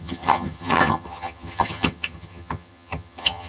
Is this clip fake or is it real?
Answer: fake